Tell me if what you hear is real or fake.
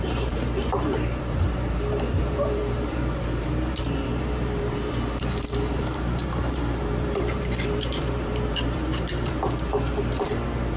fake